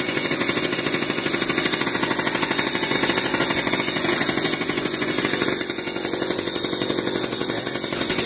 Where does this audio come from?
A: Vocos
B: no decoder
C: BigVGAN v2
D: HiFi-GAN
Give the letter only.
A